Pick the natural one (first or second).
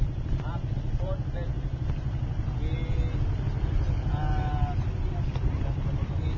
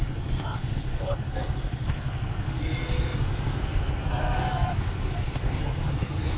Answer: first